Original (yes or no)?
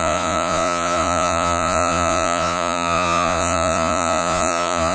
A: no